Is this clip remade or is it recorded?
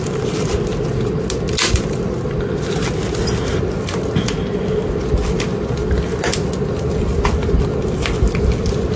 recorded